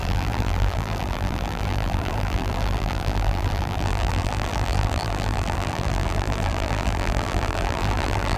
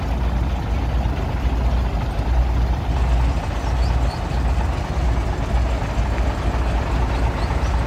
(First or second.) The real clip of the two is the second